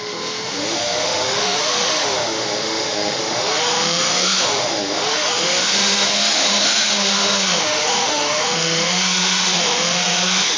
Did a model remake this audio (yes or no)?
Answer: yes